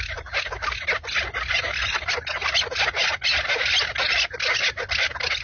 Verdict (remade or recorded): recorded